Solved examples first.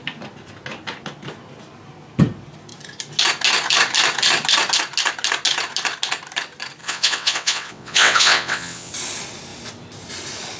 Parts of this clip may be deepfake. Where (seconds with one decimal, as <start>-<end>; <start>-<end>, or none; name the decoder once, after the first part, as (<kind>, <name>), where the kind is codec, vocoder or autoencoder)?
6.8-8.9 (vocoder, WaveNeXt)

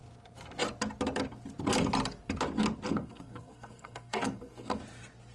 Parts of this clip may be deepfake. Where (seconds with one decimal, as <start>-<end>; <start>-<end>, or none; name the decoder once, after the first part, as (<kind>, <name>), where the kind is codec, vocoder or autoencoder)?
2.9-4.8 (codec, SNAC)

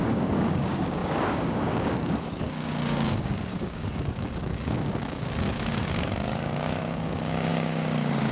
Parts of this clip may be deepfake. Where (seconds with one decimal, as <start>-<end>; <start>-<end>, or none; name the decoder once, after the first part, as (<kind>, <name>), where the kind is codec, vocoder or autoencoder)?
0.0-8.3 (codec, DAC)

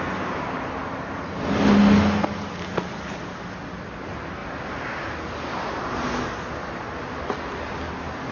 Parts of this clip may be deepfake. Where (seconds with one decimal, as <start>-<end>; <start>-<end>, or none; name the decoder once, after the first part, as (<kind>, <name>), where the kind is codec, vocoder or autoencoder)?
none

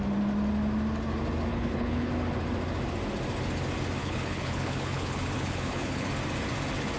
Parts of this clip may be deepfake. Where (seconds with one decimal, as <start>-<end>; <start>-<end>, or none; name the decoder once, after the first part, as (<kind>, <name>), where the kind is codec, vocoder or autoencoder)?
1.5-2.1 (codec, HILCodec); 4.0-6.1